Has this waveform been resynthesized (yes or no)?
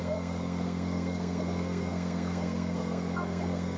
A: yes